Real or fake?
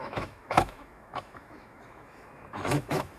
fake